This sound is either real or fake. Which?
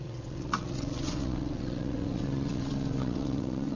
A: fake